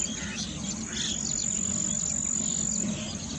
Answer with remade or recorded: recorded